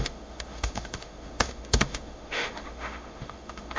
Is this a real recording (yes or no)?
no